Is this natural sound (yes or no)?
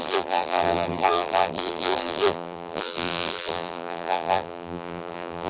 no